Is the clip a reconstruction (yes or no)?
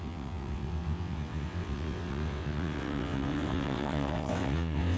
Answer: yes